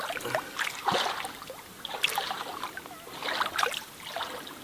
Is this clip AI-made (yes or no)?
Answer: no